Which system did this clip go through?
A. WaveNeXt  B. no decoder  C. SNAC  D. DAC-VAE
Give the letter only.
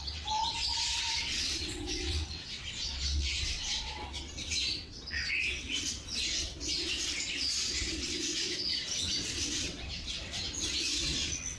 A